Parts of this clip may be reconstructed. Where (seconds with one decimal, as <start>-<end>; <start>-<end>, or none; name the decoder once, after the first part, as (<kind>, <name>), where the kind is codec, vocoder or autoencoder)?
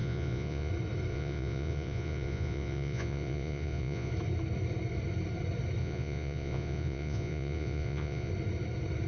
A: 0.0-0.7 (vocoder, Vocos); 1.1-4.1; 5.8-8.3